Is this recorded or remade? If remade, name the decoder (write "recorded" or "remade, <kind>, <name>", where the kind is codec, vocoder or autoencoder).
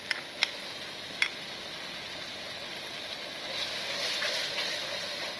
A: recorded